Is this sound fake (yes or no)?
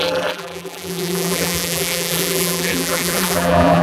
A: yes